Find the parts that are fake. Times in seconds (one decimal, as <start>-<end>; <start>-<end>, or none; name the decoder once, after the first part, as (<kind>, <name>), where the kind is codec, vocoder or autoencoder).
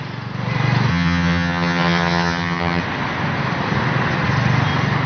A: 0.9-2.8 (vocoder, HiFi-GAN)